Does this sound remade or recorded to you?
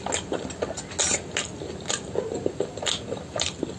recorded